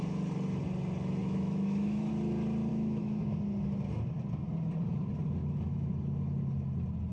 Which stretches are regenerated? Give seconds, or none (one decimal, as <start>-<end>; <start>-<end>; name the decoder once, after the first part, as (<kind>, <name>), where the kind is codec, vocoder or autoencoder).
1.2-2.1 (autoencoder, DAC-VAE); 2.7-3.3; 5.4-5.9